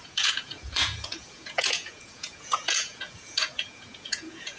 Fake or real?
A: fake